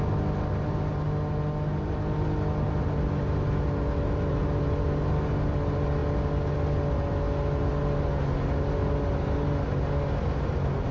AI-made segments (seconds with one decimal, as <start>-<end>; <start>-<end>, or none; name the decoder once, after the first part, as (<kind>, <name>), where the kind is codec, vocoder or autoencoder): none